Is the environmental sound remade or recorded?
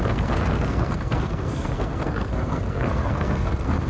remade